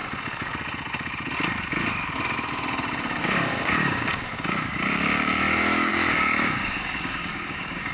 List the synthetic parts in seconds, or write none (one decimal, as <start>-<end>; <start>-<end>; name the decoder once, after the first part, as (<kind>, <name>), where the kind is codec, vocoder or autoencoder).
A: 3.2-7.9 (codec, DAC)